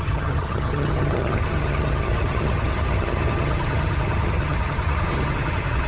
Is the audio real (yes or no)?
no